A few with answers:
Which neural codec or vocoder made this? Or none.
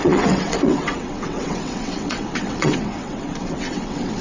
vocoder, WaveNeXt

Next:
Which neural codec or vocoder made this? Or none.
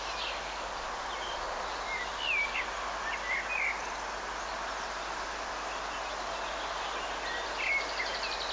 none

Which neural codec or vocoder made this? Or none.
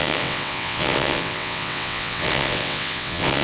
vocoder, WaveNeXt